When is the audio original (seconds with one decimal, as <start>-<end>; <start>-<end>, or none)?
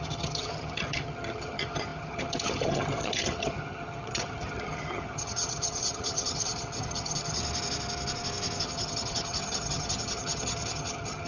7.4-8.6